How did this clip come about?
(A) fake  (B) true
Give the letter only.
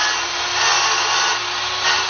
B